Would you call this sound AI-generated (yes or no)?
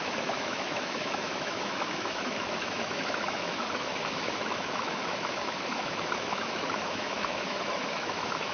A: yes